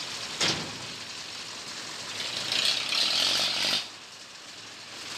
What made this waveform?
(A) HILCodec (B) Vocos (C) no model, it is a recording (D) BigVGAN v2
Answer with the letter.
C